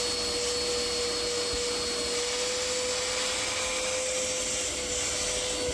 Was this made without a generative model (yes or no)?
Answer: yes